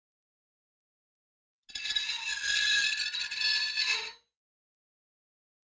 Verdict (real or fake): real